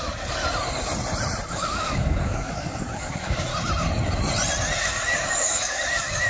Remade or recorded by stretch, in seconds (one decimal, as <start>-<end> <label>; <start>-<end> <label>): 0.0-0.4 remade; 0.4-1.5 recorded; 1.5-3.5 remade; 3.5-4.8 recorded; 4.8-6.3 remade